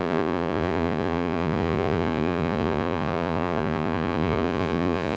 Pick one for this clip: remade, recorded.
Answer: remade